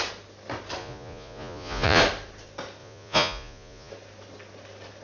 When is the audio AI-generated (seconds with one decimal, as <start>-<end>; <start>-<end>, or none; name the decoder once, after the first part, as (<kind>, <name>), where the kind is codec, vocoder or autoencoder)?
0.8-2.0 (vocoder, Vocos); 2.8-3.9